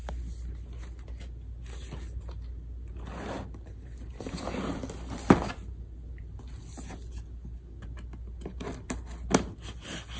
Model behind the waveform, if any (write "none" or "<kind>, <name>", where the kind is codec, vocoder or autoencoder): none